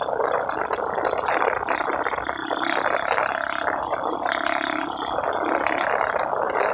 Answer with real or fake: real